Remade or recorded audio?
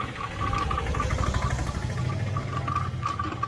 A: recorded